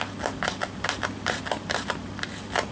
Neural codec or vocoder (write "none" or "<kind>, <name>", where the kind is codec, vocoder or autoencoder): none